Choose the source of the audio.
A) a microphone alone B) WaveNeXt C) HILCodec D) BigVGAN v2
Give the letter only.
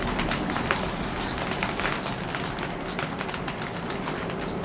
A